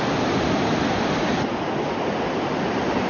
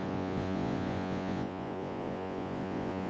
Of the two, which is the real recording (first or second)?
first